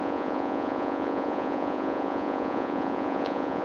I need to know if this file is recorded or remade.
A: remade